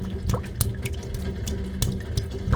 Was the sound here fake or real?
real